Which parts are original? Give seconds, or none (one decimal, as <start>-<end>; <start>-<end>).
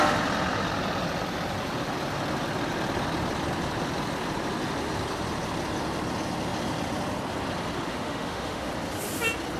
0.0-7.9; 8.7-9.6